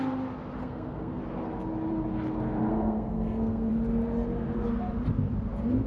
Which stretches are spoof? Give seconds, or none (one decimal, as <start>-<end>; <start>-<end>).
0.6-1.2; 2.7-3.7